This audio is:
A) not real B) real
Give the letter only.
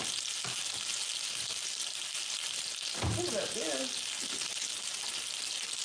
B